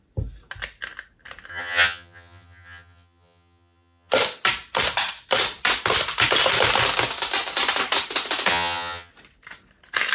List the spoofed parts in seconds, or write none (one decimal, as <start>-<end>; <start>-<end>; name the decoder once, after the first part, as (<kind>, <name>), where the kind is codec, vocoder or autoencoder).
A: 1.5-4.1 (vocoder, HiFi-GAN); 8.5-9.1